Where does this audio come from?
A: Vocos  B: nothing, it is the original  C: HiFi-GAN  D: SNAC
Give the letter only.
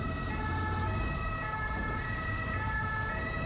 B